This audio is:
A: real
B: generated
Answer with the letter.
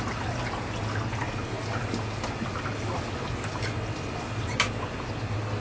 A